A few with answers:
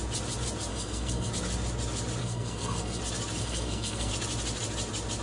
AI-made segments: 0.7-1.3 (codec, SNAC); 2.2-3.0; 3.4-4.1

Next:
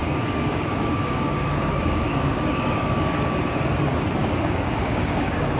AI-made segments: 0.0-3.4 (codec, DAC); 4.2-5.6

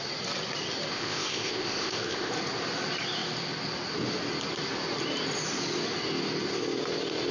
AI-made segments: 0.9-2.3 (codec, ZipCodec)